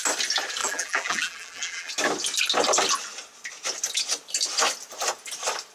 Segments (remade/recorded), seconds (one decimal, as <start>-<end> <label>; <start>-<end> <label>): 0.0-0.6 recorded; 0.6-1.9 remade; 1.9-5.7 recorded

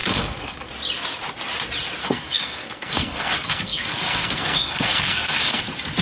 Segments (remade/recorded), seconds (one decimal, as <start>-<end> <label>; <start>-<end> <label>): 0.0-0.7 remade; 0.7-2.0 recorded; 2.0-5.6 remade; 5.6-6.0 recorded

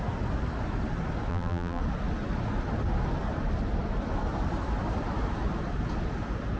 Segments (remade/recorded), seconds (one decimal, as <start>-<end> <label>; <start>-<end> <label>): 0.0-1.3 recorded; 1.3-1.8 remade; 1.8-6.6 recorded

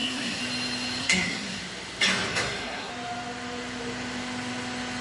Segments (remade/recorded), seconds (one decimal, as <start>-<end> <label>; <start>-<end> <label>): 0.0-0.4 remade; 0.4-1.0 recorded; 1.0-1.6 remade; 1.6-2.3 recorded; 2.3-2.9 remade; 2.9-5.0 recorded

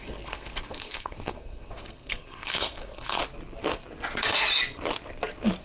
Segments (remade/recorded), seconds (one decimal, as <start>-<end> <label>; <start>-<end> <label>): 0.0-3.2 remade; 3.2-5.6 recorded